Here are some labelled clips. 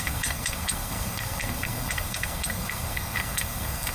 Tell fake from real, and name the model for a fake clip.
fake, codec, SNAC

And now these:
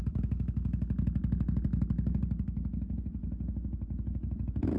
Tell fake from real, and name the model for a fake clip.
real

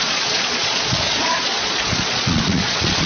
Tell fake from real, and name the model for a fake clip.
fake, vocoder, Vocos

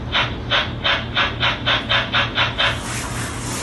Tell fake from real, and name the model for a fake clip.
real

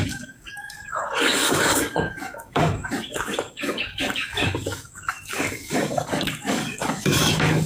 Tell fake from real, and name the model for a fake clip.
fake, codec, DAC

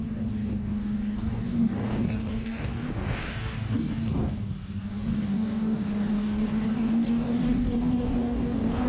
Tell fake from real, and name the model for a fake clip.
fake, codec, DAC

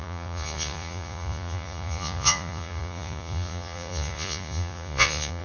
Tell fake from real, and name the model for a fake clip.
fake, vocoder, Vocos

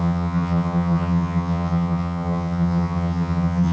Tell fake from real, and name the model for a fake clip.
fake, vocoder, HiFi-GAN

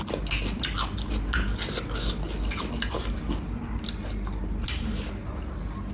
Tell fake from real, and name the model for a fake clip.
real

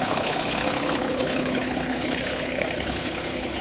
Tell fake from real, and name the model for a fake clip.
fake, codec, HILCodec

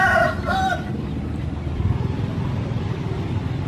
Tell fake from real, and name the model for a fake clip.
real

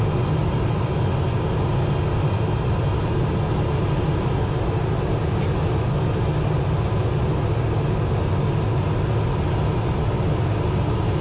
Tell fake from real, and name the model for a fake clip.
real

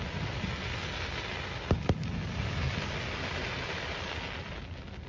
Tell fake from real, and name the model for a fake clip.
real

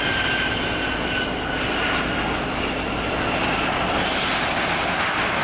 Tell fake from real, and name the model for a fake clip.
real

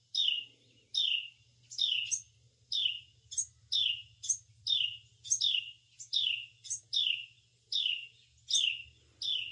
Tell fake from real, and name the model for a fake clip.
real